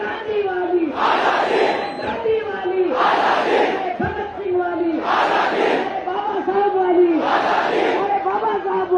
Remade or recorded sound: recorded